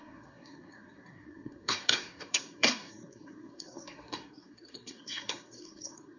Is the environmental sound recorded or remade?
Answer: remade